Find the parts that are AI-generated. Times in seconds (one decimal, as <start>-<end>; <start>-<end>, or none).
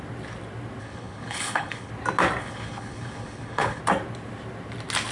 0.8-1.9; 2.4-3.8